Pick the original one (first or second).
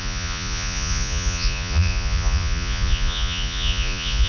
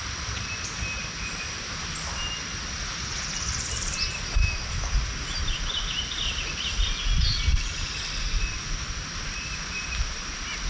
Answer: second